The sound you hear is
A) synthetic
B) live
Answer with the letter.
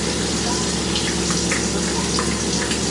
B